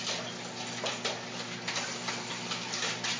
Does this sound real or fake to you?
real